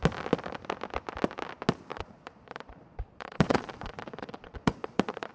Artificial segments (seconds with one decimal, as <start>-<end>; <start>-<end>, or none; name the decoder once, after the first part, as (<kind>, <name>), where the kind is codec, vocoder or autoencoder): 1.9-5.3 (vocoder, Vocos)